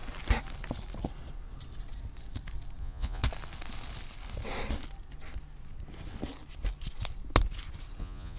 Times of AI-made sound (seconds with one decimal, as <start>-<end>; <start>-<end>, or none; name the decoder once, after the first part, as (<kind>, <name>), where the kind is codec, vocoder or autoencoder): 2.8-3.2 (vocoder, Vocos); 8.0-8.4